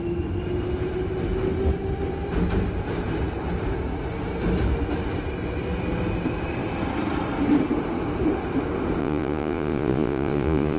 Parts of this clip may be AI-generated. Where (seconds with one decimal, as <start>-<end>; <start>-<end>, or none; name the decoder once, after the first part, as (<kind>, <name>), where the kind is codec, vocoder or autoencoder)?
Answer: 9.0-10.8 (vocoder, Vocos)

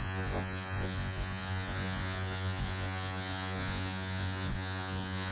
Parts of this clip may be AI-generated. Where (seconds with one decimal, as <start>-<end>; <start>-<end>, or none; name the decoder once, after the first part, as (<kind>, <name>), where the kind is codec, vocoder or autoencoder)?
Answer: 0.0-5.3 (vocoder, Vocos)

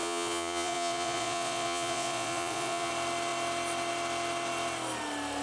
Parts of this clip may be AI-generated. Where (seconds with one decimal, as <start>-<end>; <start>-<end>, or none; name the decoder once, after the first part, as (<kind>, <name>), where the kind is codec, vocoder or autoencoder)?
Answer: 0.0-2.9 (vocoder, Vocos)

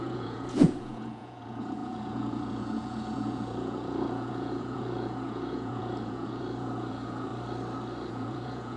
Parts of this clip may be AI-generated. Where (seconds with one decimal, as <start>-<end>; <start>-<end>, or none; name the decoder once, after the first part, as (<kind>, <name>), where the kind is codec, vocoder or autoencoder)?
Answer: 0.0-7.3 (vocoder, Vocos); 8.1-8.8

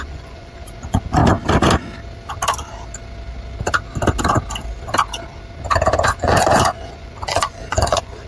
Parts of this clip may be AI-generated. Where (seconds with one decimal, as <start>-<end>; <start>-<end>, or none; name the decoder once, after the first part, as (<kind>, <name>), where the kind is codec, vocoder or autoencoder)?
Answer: 0.0-1.2 (vocoder, Vocos); 6.2-8.3

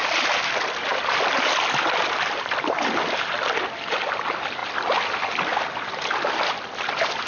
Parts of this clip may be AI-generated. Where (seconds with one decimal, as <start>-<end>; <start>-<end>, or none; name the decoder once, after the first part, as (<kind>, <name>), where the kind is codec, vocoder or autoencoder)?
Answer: none